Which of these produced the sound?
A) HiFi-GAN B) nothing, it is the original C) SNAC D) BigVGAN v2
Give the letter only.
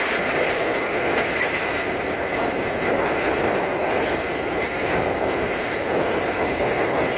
B